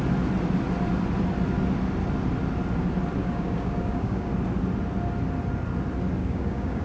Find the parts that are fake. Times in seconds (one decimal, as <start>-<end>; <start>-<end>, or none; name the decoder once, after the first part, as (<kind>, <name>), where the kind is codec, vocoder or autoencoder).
3.2-4.3 (codec, DAC); 6.2-6.8